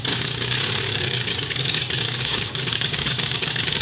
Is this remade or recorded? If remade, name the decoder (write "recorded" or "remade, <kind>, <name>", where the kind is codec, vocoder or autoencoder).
remade, codec, DAC